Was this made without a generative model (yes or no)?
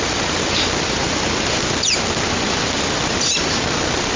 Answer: yes